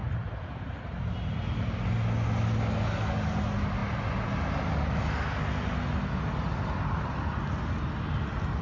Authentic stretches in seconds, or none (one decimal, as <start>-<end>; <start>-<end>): 0.0-8.6